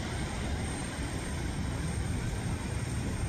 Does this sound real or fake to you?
fake